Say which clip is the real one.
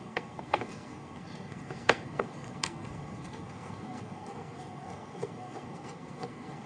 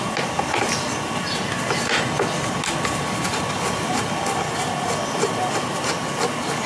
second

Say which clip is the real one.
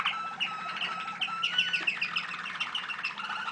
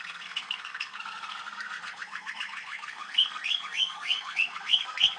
first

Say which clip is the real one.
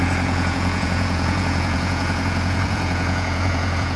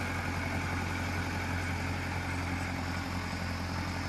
second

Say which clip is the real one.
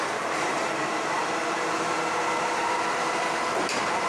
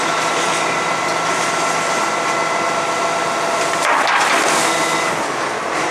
second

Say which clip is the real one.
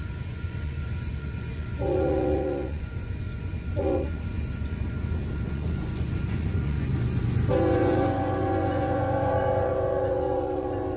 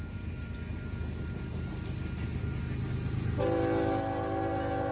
second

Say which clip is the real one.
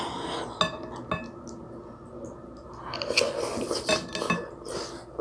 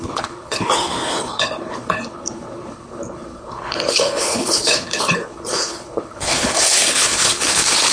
first